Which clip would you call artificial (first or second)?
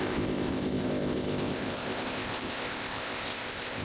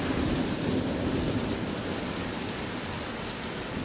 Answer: first